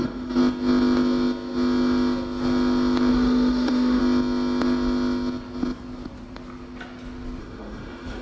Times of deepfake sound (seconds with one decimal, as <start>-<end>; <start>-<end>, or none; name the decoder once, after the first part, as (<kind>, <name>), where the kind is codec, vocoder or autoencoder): 0.0-0.4 (autoencoder, DAC-VAE); 3.1-4.0; 7.4-8.2